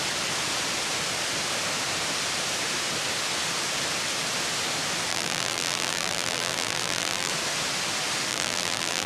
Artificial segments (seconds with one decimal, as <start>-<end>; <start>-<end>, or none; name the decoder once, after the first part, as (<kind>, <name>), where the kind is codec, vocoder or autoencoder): 5.1-7.3 (vocoder, BigVGAN v2); 8.3-9.1

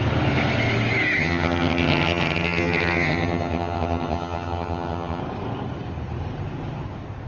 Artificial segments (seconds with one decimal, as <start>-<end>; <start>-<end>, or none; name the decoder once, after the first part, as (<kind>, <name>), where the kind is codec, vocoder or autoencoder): 1.2-5.2 (vocoder, HiFi-GAN)

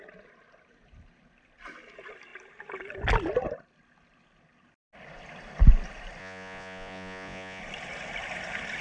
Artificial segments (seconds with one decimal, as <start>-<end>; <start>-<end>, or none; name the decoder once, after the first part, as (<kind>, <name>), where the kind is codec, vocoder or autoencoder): 6.2-7.6 (vocoder, Vocos)